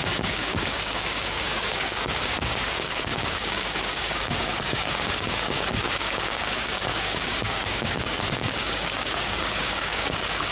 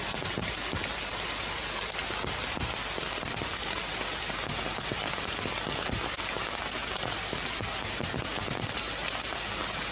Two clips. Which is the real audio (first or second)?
second